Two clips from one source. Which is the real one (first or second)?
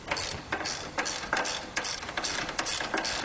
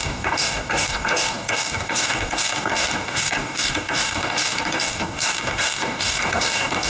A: first